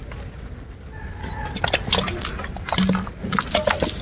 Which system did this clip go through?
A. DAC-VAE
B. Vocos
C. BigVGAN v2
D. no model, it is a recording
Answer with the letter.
D